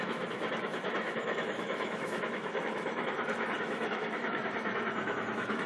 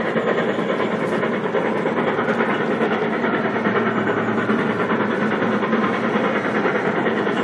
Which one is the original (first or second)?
second